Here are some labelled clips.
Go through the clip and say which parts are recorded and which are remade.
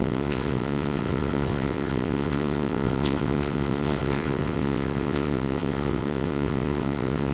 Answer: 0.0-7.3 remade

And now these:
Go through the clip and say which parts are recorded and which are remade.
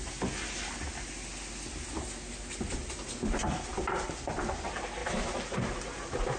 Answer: 0.0-6.4 recorded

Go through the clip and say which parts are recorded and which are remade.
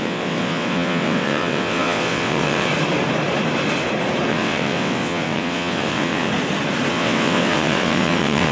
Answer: 0.0-2.7 remade; 2.7-4.3 recorded; 4.3-6.3 remade; 6.3-6.9 recorded; 6.9-8.5 remade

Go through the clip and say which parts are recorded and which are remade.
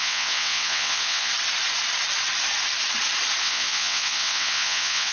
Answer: 0.0-1.3 remade; 1.3-3.4 recorded; 3.4-5.1 remade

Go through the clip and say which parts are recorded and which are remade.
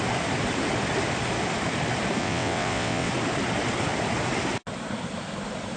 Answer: 0.0-2.2 recorded; 2.2-3.1 remade; 3.1-5.8 recorded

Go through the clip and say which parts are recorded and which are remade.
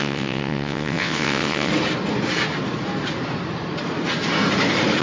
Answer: 0.0-1.7 remade; 1.7-5.0 recorded